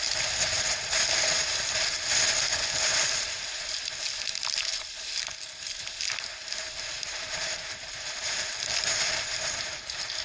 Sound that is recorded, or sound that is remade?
recorded